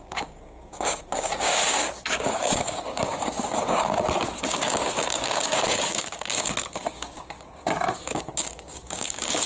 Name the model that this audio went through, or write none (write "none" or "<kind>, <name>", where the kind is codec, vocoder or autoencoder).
codec, DAC